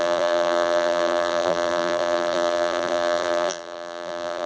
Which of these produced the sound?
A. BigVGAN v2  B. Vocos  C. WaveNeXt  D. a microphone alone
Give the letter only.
A